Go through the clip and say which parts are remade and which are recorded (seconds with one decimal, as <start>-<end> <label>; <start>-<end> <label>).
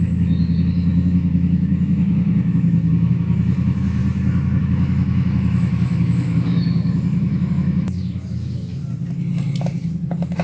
0.0-4.0 remade; 4.0-4.6 recorded; 4.6-8.7 remade; 8.7-10.4 recorded